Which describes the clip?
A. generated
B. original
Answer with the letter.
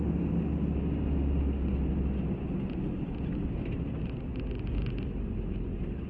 B